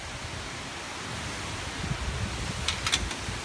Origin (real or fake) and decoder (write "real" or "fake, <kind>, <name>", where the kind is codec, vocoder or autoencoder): real